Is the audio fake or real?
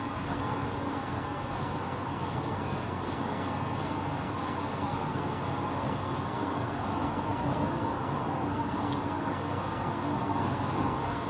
fake